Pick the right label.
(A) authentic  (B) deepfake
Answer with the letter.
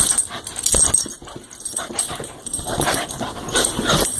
A